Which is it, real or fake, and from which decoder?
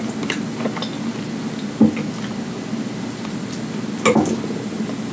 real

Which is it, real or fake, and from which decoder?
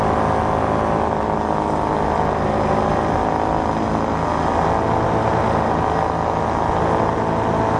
real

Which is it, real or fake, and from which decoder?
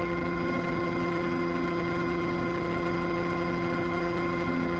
fake, vocoder, HiFi-GAN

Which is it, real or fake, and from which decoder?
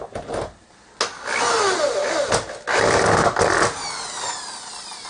real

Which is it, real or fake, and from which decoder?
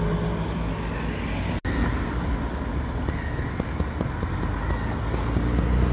real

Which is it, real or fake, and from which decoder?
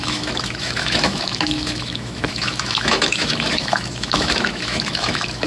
fake, autoencoder, DAC-VAE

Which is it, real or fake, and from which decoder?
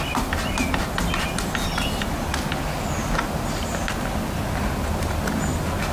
real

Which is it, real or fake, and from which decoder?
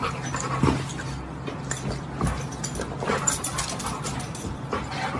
real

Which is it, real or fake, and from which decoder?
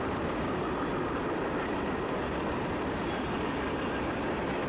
real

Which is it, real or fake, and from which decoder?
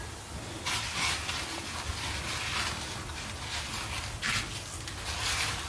real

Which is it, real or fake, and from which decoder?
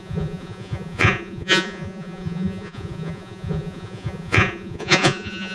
fake, vocoder, Vocos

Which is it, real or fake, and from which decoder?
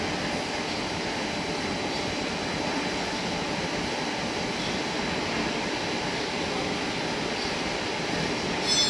real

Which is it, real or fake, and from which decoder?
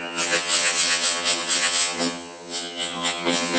fake, vocoder, HiFi-GAN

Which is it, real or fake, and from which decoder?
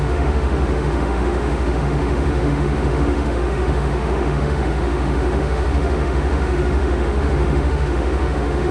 fake, autoencoder, DAC-VAE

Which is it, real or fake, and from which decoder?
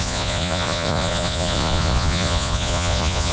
fake, vocoder, Vocos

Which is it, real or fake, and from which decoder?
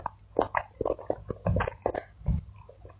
real